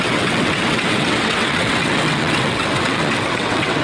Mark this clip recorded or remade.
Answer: remade